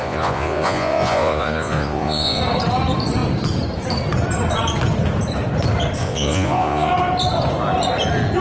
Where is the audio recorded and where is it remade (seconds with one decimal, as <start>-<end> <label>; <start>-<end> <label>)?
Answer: 0.0-2.4 remade; 2.4-6.0 recorded; 6.0-6.9 remade; 6.9-8.4 recorded